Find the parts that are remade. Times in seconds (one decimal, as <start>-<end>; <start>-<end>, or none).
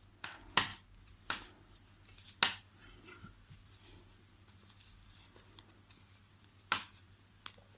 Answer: none